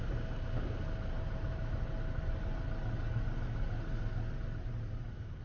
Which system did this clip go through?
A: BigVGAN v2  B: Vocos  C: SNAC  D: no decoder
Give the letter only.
D